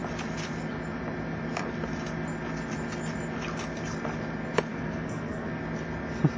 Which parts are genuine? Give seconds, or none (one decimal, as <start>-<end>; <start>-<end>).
0.0-4.7; 5.5-6.4